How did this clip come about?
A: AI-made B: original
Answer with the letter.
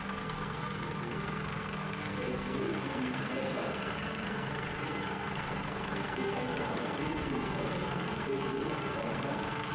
A